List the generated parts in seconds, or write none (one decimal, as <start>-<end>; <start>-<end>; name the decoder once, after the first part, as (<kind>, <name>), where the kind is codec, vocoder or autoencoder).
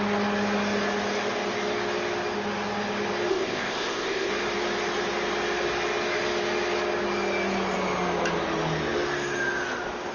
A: 3.3-4.3 (codec, ZipCodec)